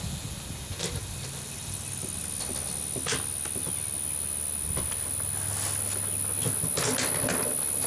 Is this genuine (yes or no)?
yes